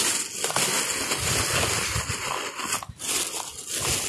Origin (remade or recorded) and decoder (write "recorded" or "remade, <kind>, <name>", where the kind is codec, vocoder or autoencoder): recorded